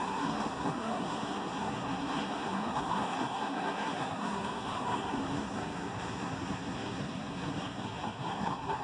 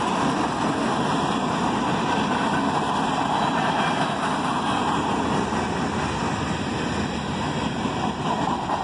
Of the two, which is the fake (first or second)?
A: first